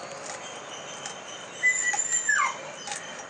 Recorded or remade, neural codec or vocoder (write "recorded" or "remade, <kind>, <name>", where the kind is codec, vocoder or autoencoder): recorded